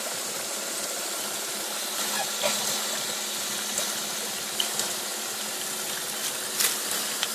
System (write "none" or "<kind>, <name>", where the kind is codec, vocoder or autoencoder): none